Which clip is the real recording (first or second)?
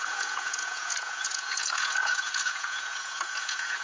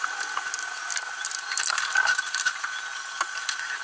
second